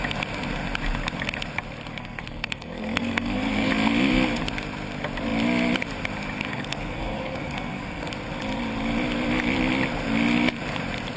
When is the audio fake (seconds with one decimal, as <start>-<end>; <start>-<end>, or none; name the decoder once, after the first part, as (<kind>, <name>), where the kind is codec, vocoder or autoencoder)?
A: 2.0-3.7 (codec, SNAC); 6.5-8.1